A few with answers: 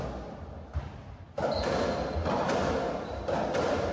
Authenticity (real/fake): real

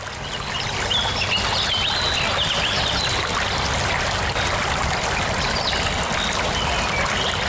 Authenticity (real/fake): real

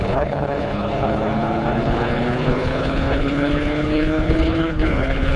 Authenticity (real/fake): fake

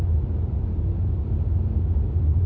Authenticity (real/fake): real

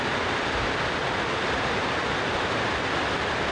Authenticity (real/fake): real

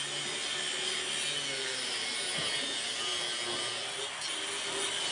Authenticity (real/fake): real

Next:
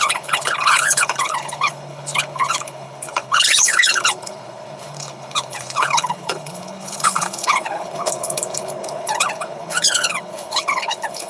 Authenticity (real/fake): fake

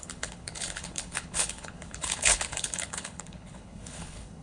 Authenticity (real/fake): fake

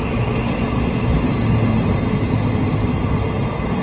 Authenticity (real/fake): real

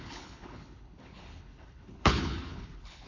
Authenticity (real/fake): fake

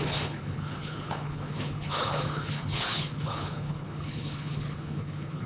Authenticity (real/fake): fake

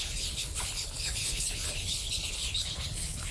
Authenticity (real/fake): fake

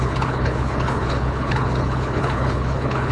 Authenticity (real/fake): fake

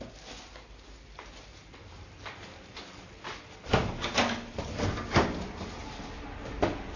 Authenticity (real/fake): real